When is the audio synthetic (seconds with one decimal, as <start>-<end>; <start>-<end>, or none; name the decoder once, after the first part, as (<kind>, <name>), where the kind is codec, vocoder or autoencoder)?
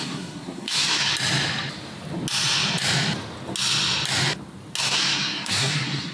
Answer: 0.0-1.1 (codec, SNAC); 4.8-6.1